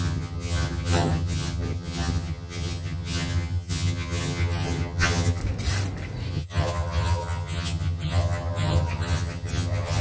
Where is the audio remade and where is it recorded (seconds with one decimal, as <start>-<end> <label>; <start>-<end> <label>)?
0.0-5.4 remade; 5.4-6.3 recorded; 6.3-10.0 remade